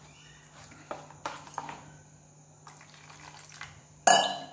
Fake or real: real